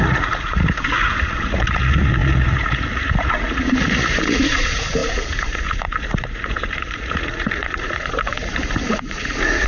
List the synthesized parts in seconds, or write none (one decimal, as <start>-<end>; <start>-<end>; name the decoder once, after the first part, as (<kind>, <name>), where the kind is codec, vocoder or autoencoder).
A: 0.0-9.7 (vocoder, Vocos)